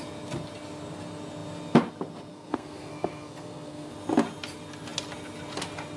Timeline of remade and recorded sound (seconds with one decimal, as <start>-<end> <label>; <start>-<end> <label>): 0.0-2.3 recorded; 2.3-3.9 remade; 3.9-6.0 recorded